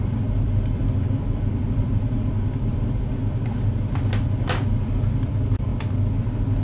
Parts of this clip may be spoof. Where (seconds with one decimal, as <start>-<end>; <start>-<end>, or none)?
0.0-5.7